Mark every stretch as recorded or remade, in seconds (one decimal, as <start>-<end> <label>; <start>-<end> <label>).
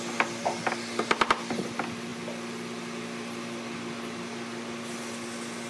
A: 0.0-5.7 recorded